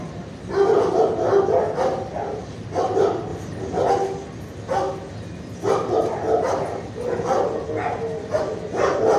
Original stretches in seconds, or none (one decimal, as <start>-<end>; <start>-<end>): 0.0-9.2